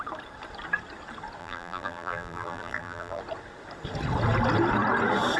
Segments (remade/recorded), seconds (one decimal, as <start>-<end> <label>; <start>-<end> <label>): 0.0-1.4 recorded; 1.4-3.2 remade; 3.2-5.4 recorded